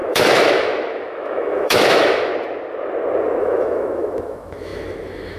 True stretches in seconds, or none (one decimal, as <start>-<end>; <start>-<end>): 2.3-3.4